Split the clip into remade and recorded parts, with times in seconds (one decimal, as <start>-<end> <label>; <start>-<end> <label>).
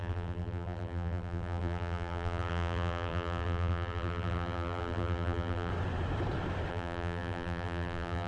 0.0-5.7 remade; 5.7-6.7 recorded; 6.7-8.3 remade